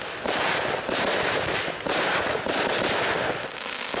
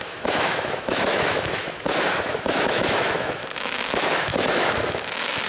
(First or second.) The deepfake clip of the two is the second